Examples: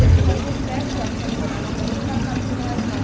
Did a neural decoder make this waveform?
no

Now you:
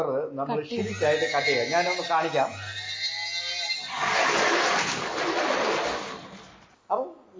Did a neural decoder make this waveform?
no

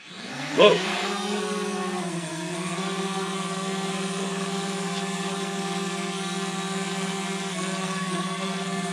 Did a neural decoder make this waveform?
yes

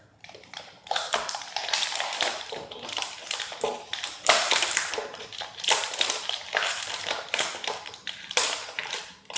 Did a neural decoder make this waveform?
yes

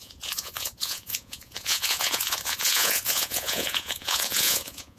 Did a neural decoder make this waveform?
yes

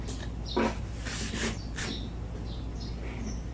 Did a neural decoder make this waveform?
no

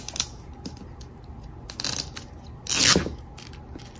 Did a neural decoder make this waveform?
no